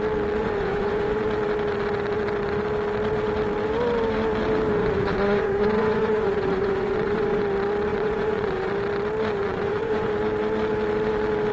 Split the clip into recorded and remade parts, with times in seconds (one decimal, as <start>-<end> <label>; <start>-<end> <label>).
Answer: 0.0-0.4 recorded; 0.4-1.2 remade; 1.2-4.8 recorded; 4.8-7.4 remade; 7.4-7.9 recorded; 7.9-8.7 remade; 8.7-9.4 recorded; 9.4-10.1 remade; 10.1-11.5 recorded